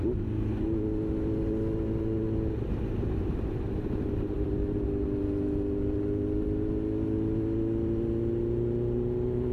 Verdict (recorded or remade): recorded